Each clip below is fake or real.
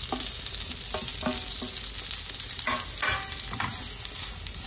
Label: real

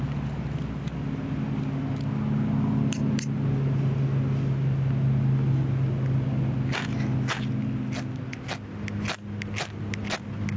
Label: real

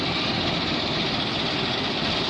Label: real